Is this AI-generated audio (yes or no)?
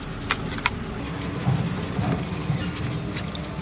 no